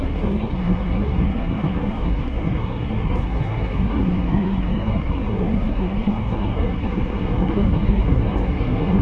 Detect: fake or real fake